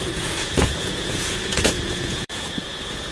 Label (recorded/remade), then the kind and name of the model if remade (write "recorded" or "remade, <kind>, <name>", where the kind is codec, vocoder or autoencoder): remade, vocoder, Vocos